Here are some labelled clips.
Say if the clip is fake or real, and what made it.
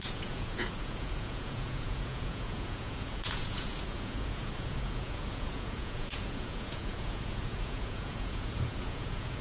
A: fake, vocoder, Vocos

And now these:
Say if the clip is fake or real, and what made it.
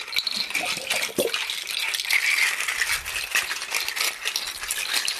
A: real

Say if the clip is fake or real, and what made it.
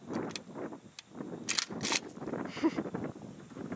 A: real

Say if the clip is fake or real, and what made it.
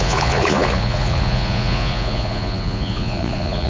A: fake, vocoder, Vocos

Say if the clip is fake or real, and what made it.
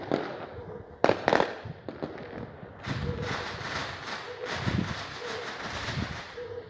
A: real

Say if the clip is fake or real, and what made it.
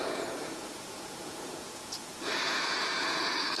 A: fake, vocoder, Vocos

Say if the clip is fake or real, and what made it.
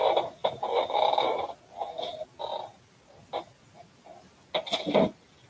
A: real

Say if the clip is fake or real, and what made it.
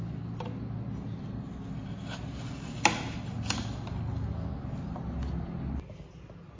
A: real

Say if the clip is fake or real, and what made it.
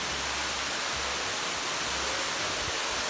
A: real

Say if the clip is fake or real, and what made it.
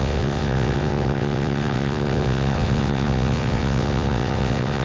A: fake, vocoder, WaveNeXt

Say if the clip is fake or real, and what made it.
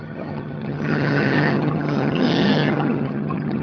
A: fake, vocoder, HiFi-GAN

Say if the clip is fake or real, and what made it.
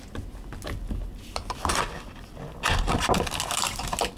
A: real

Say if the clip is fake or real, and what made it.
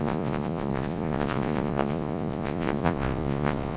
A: fake, vocoder, Vocos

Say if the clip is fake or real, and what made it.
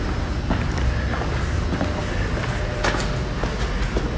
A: real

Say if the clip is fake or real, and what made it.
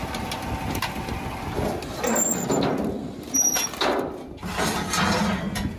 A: real